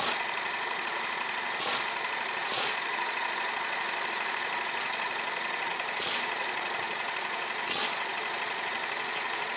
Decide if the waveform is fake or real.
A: fake